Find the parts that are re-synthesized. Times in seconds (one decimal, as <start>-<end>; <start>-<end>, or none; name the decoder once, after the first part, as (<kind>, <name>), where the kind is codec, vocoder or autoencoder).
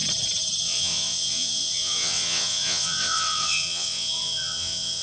0.6-5.0 (vocoder, WaveNeXt)